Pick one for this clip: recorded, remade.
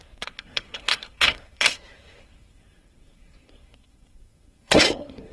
remade